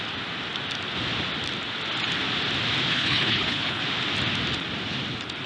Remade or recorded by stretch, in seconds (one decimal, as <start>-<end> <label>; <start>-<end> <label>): 0.0-2.9 recorded; 2.9-3.8 remade; 3.8-5.5 recorded